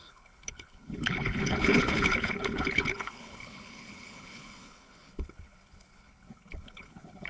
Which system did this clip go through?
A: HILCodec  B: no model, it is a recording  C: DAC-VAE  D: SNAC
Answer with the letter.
A